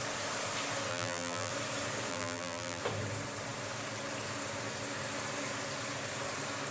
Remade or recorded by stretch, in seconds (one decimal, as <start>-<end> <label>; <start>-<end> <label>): 0.0-0.9 recorded; 0.9-1.5 remade; 1.5-2.1 recorded; 2.1-2.8 remade; 2.8-6.7 recorded

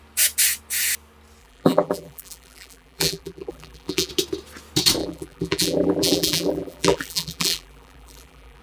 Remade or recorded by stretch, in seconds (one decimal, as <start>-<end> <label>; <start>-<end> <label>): 0.0-1.4 recorded; 1.4-4.1 remade; 4.1-5.0 recorded; 5.0-8.6 remade

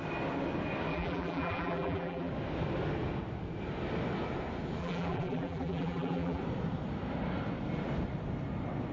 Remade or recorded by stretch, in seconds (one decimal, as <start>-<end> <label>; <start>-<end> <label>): 0.0-0.9 recorded; 0.9-2.3 remade; 2.3-4.8 recorded; 4.8-6.4 remade; 6.4-8.9 recorded

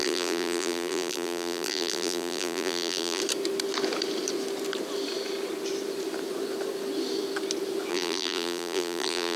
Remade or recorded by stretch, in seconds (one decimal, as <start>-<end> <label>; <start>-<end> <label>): 0.0-3.2 remade; 3.2-7.9 recorded; 7.9-9.4 remade

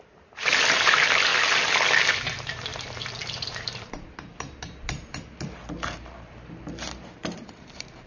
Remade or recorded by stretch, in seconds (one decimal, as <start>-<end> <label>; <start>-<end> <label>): 0.0-1.3 remade; 1.3-2.1 recorded; 2.1-8.1 remade

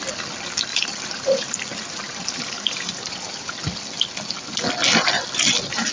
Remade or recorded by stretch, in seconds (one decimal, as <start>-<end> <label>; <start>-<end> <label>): 0.0-0.7 recorded; 0.7-3.5 remade; 3.5-5.9 recorded